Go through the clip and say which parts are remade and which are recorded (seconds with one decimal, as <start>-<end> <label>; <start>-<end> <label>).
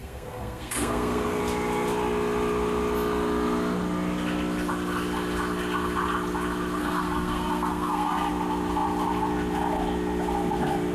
0.0-1.4 remade; 1.4-6.8 recorded; 6.8-8.3 remade; 8.3-10.9 recorded